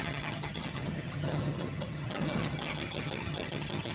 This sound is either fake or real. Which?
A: fake